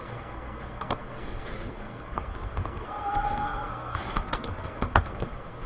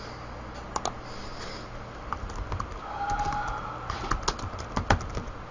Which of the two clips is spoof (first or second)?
first